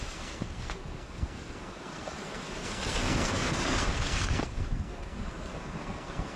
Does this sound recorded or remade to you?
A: remade